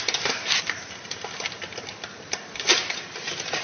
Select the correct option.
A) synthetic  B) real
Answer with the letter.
A